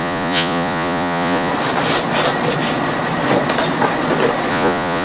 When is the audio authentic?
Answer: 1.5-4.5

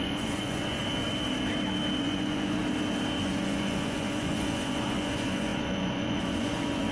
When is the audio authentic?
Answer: 0.8-2.0; 2.6-3.2